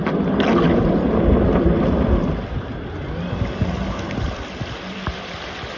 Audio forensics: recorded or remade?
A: recorded